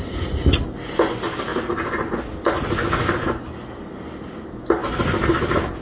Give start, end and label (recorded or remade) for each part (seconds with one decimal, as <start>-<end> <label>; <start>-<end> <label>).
0.0-5.8 recorded

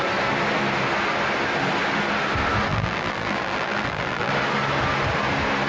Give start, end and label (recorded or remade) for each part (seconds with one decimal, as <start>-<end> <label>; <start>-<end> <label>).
0.0-2.7 recorded; 2.7-4.3 remade; 4.3-5.7 recorded

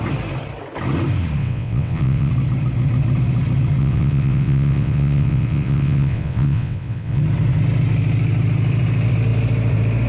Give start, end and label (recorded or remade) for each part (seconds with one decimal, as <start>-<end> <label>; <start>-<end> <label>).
0.0-1.4 recorded; 1.4-2.3 remade; 2.3-3.8 recorded; 3.8-7.2 remade; 7.2-10.1 recorded

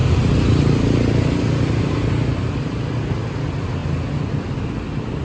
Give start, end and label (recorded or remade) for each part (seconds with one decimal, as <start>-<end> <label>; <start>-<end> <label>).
0.0-5.2 recorded

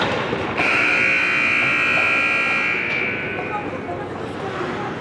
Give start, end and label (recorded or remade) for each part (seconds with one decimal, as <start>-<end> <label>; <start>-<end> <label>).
0.0-5.0 recorded